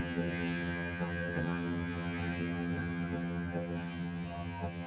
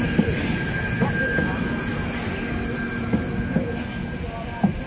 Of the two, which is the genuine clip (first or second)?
second